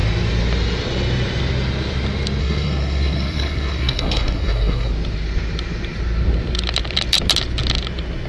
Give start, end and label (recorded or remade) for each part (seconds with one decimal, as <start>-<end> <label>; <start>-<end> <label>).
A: 0.0-2.4 recorded; 2.4-4.9 remade; 4.9-8.3 recorded